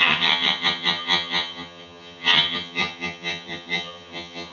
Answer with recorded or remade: remade